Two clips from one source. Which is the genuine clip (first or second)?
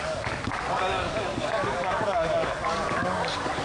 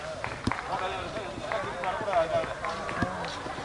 second